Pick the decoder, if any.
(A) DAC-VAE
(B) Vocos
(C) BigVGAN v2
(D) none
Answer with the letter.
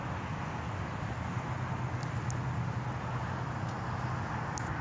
D